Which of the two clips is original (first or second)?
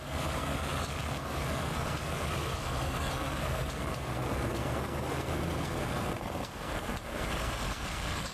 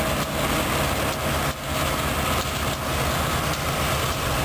second